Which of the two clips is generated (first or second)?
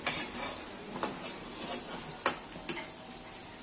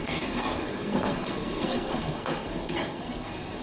second